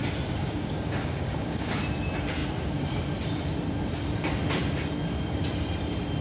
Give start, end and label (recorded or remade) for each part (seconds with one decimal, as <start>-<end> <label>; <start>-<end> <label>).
0.0-0.4 recorded; 0.4-1.8 remade; 1.8-6.2 recorded